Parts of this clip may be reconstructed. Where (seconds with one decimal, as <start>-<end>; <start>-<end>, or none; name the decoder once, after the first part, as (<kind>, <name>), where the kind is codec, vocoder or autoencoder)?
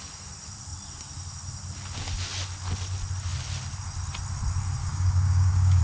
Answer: 4.8-5.8 (codec, DAC)